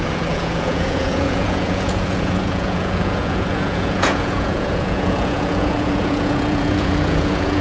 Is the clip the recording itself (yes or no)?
no